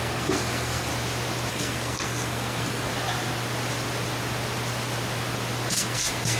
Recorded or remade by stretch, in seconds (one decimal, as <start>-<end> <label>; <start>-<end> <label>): 0.0-0.9 remade; 0.9-1.5 recorded; 1.5-2.9 remade; 2.9-5.7 recorded; 5.7-6.4 remade